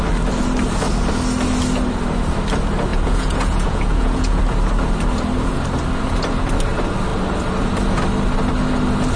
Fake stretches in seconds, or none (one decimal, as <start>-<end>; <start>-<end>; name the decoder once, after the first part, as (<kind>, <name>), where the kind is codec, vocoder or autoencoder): 2.9-4.4 (vocoder, Vocos)